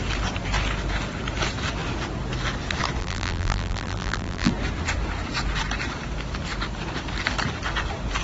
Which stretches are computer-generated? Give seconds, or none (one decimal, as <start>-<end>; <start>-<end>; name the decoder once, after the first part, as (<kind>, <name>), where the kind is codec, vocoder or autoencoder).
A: 3.0-4.5 (vocoder, BigVGAN v2)